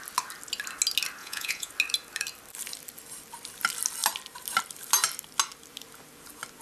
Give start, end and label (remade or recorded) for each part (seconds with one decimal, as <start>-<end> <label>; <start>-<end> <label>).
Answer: 0.0-1.2 recorded; 1.2-1.7 remade; 1.7-6.6 recorded